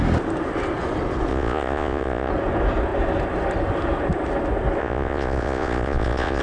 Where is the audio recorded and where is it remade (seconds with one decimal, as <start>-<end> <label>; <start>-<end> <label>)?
0.0-1.3 recorded; 1.3-2.3 remade; 2.3-4.8 recorded; 4.8-6.4 remade